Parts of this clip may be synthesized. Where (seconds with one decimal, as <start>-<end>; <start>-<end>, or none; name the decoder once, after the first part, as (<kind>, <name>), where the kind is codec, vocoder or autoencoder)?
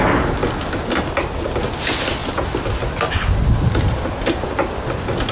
none